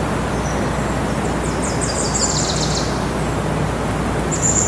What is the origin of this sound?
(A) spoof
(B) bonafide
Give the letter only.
B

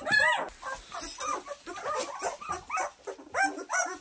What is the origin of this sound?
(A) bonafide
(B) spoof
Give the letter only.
A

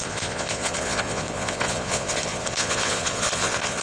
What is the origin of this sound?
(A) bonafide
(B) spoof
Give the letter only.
B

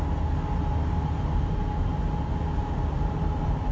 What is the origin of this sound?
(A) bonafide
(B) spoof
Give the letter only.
A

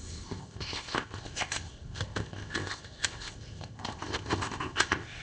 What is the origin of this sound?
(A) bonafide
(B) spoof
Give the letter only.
B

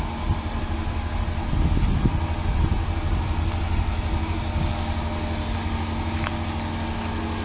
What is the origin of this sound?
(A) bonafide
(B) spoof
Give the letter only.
A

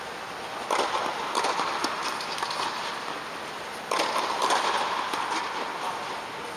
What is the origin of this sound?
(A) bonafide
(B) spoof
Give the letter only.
A